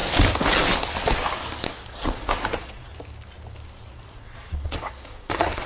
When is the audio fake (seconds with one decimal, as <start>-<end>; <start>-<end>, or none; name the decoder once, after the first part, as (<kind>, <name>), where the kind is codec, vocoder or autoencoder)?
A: 1.9-2.9 (vocoder, Vocos); 3.9-5.7